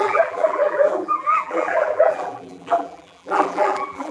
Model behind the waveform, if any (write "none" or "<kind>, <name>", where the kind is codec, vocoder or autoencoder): vocoder, BigVGAN v2